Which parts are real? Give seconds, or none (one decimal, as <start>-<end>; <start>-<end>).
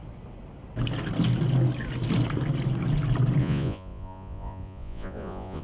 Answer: 0.0-3.4